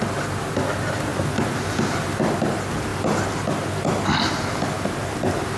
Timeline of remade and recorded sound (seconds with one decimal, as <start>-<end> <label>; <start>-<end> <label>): 0.0-5.6 recorded